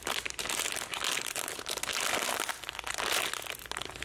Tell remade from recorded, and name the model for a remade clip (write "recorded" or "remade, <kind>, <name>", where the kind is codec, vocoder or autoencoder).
recorded